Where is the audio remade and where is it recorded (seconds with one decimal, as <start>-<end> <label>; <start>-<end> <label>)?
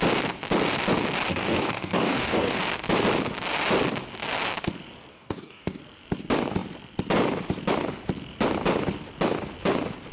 0.0-1.3 recorded; 1.3-2.6 remade; 2.6-5.1 recorded; 5.1-5.8 remade; 5.8-10.1 recorded